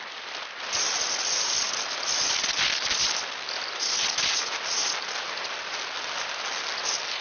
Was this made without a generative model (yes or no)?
yes